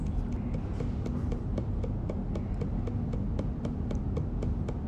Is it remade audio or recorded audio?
recorded